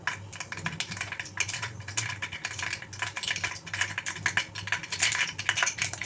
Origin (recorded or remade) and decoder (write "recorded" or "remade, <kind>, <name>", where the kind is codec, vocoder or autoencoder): recorded